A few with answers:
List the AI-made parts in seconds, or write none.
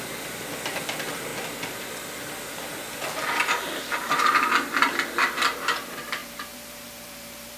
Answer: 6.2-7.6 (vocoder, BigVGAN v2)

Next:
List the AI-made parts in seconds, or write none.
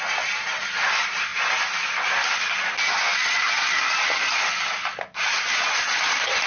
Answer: 0.0-1.3 (vocoder, BigVGAN v2); 5.2-6.5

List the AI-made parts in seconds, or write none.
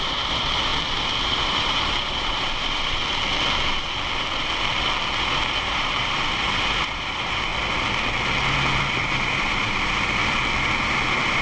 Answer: 0.0-0.7 (vocoder, BigVGAN v2); 1.2-3.0; 5.6-7.5; 8.9-10.2; 10.8-11.4